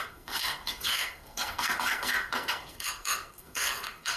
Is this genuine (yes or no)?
no